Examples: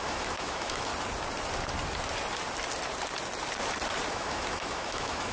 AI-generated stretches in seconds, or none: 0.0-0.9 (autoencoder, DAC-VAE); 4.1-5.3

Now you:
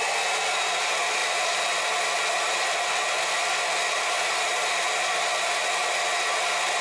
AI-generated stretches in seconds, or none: none